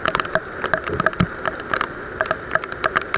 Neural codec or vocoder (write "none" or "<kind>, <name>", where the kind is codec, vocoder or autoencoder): none